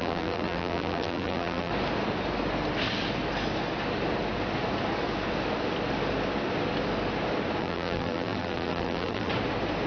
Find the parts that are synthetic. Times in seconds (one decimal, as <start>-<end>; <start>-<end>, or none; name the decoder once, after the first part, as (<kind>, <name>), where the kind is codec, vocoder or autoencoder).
0.0-1.7 (vocoder, BigVGAN v2); 7.6-9.3